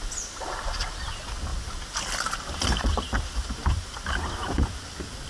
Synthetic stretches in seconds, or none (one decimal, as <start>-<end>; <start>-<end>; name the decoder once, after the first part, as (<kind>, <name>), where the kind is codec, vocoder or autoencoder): none